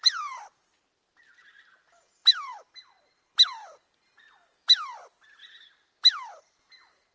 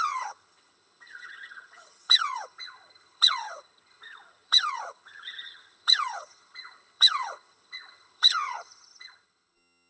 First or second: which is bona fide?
first